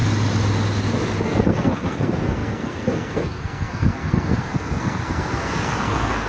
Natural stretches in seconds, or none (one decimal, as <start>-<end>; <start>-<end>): 0.0-1.2